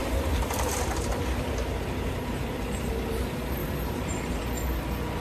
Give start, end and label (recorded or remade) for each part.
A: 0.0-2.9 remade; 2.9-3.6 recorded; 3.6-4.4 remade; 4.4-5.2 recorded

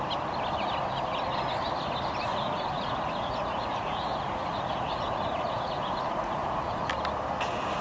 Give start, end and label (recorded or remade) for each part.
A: 0.0-2.3 recorded; 2.3-6.9 remade; 6.9-7.8 recorded